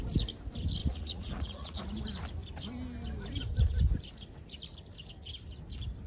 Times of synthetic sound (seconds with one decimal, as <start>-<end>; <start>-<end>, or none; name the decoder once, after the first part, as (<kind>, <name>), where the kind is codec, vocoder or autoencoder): 0.8-1.8 (vocoder, Vocos)